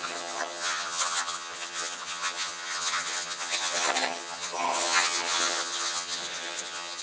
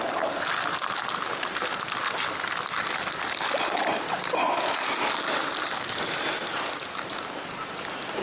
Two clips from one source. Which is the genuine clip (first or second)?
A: second